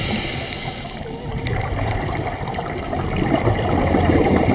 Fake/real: real